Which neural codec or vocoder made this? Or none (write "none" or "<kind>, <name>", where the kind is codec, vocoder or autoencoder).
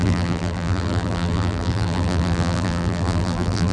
vocoder, BigVGAN v2